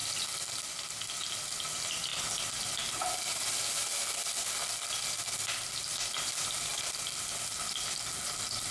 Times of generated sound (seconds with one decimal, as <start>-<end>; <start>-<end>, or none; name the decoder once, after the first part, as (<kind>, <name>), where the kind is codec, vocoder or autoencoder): none